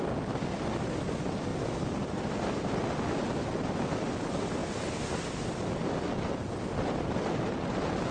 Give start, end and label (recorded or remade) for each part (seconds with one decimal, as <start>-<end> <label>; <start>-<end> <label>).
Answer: 0.0-8.1 recorded